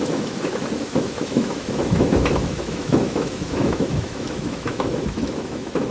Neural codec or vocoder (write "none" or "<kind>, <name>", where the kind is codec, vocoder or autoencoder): autoencoder, DAC-VAE